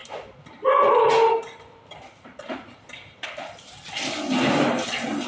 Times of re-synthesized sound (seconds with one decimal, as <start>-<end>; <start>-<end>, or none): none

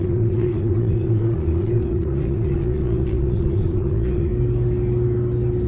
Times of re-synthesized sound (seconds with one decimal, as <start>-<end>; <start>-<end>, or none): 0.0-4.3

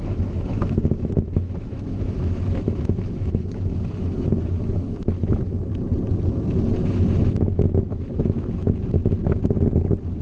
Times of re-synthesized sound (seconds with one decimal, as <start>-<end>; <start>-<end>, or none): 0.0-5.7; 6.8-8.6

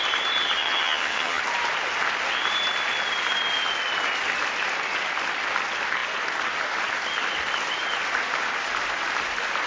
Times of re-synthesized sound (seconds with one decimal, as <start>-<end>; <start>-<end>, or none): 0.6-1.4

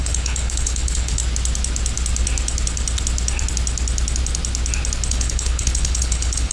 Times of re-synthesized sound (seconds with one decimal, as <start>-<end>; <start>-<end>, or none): 0.0-1.2; 5.1-6.5